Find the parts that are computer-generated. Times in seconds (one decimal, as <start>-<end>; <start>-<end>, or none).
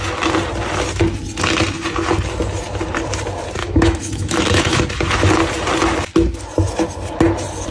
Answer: 3.6-4.8